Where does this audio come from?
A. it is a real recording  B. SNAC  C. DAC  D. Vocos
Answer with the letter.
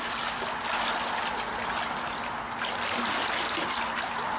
A